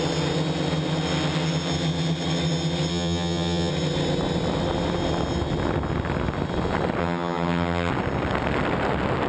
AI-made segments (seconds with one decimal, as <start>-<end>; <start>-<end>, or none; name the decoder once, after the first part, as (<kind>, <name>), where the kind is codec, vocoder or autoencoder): 2.9-3.7 (vocoder, HiFi-GAN); 7.0-7.9